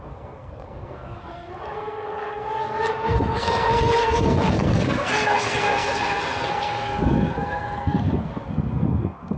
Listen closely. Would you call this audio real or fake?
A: fake